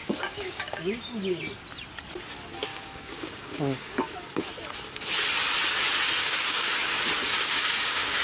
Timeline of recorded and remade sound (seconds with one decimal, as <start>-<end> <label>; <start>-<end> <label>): 0.0-1.4 remade; 1.4-2.7 recorded; 2.7-4.5 remade; 4.5-6.2 recorded; 6.2-7.0 remade; 7.0-7.4 recorded; 7.4-8.2 remade